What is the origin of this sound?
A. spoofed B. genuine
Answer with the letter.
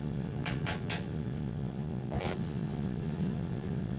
A